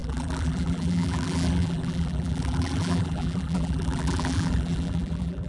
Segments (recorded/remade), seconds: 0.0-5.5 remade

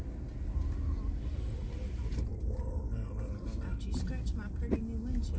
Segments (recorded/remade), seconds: 0.0-5.4 recorded

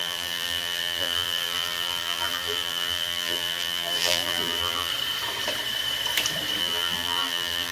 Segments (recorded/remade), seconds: 0.0-4.9 remade; 4.9-6.6 recorded; 6.6-7.7 remade